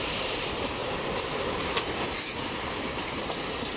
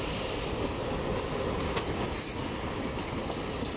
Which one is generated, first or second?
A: first